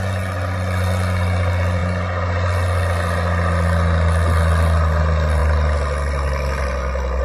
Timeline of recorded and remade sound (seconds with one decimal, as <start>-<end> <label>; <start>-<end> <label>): 0.0-5.4 recorded; 5.4-7.2 remade